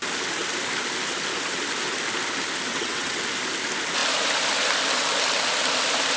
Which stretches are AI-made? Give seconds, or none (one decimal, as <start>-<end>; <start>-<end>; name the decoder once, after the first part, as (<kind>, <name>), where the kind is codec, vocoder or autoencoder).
2.7-3.2 (vocoder, WaveNeXt)